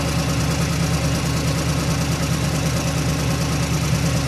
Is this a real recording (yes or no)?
yes